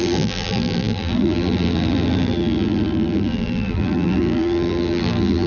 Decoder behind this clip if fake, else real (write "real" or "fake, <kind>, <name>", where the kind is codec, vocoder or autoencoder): fake, vocoder, BigVGAN v2